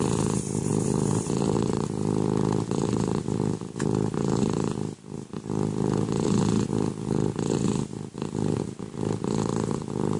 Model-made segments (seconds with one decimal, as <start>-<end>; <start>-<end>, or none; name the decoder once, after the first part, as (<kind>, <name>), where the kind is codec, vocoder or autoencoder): none

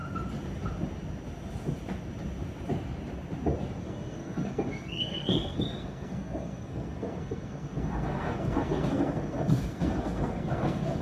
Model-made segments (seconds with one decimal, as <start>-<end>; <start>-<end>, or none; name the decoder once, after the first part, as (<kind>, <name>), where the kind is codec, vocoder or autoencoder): 3.8-11.0 (codec, SNAC)

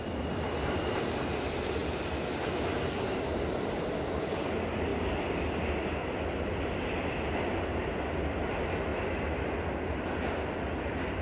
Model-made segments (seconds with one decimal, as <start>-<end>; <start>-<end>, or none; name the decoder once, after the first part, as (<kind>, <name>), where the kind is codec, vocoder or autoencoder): none